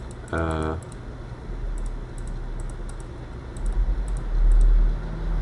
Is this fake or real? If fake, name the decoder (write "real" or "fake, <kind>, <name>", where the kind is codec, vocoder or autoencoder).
real